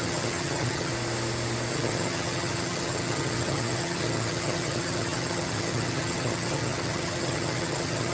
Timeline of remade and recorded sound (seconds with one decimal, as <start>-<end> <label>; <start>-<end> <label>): 0.0-0.9 remade; 0.9-1.7 recorded; 1.7-8.1 remade